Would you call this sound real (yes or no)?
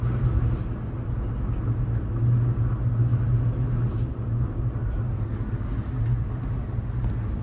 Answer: yes